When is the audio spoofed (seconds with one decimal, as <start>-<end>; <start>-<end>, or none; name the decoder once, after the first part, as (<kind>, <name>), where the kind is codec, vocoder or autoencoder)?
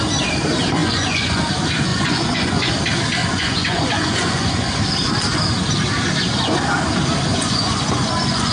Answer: 0.8-1.4 (vocoder, Vocos); 1.9-2.7; 3.2-4.7; 7.3-8.5